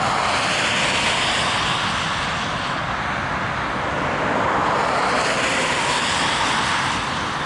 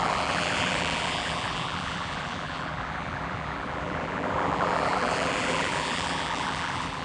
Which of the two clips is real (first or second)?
first